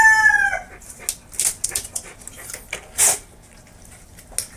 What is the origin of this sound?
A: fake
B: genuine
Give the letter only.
B